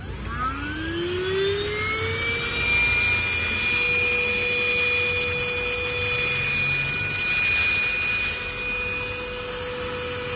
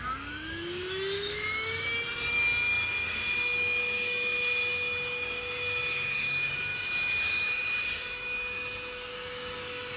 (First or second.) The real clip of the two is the first